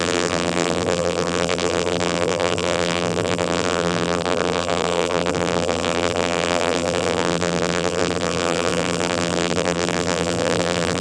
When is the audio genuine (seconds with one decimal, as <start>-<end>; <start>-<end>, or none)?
none